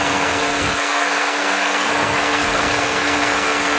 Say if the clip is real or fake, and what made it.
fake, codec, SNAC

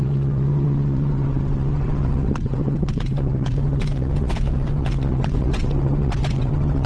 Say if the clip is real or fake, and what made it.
fake, vocoder, WaveNeXt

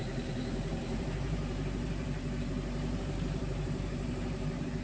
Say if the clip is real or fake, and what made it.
fake, vocoder, BigVGAN v2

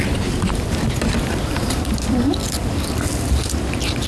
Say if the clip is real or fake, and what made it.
real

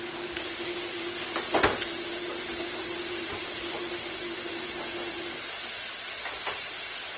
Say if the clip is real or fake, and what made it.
real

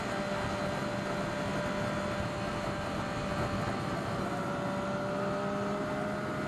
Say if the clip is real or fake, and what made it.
real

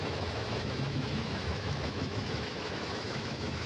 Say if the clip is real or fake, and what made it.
fake, autoencoder, DAC-VAE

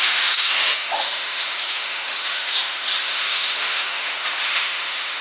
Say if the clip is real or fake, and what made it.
fake, autoencoder, DAC-VAE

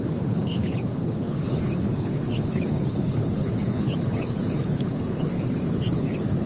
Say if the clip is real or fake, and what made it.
fake, codec, HILCodec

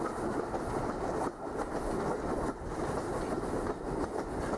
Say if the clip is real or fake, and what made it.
real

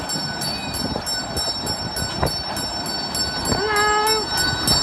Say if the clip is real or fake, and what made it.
real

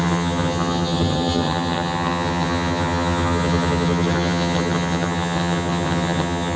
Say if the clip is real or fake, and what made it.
fake, vocoder, HiFi-GAN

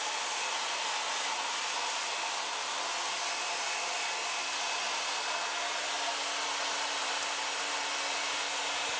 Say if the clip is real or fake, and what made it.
real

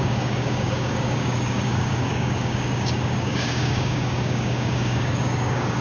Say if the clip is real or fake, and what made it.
fake, codec, DAC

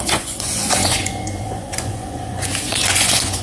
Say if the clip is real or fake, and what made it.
fake, vocoder, Vocos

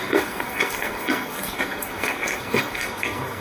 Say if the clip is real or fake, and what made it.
fake, codec, SNAC